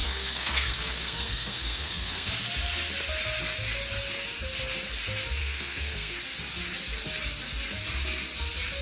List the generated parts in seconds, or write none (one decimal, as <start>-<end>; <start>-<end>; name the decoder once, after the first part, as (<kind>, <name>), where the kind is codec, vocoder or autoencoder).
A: 0.0-2.3 (codec, SNAC); 5.4-6.2